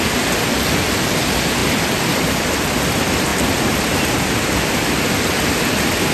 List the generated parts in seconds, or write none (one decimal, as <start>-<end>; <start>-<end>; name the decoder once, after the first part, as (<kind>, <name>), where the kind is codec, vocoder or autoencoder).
1.6-2.7 (vocoder, BigVGAN v2); 3.3-4.2